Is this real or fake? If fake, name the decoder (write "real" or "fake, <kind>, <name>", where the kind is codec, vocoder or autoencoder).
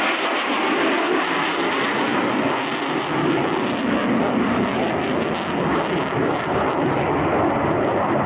real